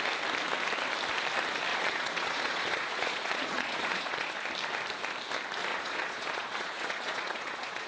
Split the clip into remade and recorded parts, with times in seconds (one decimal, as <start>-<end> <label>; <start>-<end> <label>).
0.0-1.7 recorded; 1.7-4.3 remade; 4.3-5.7 recorded; 5.7-7.9 remade